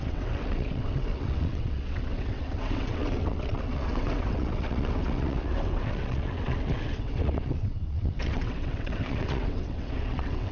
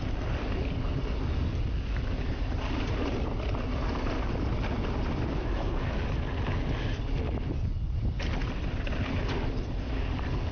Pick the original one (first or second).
second